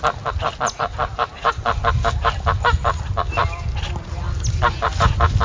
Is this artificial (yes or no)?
no